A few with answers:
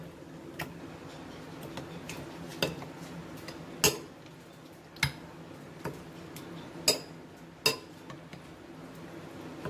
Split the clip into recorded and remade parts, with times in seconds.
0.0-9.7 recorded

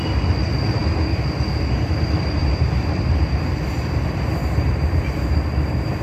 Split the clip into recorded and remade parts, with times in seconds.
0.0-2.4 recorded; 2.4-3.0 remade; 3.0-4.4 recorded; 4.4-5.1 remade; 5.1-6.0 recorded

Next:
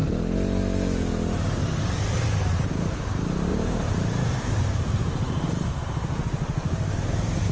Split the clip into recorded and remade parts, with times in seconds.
0.0-3.5 recorded; 3.5-5.7 remade; 5.7-7.5 recorded